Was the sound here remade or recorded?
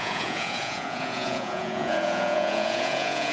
remade